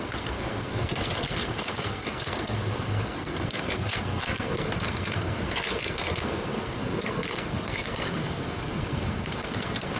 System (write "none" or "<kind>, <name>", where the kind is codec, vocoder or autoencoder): codec, SNAC